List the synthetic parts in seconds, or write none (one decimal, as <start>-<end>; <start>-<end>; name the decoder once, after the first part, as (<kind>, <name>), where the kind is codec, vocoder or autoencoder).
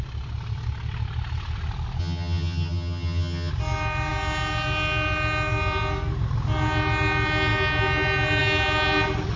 2.0-3.5 (vocoder, HiFi-GAN)